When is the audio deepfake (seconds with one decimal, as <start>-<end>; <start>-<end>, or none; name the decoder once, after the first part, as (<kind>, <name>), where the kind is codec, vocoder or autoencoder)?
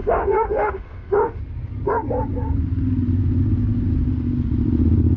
0.0-1.4 (autoencoder, DAC-VAE)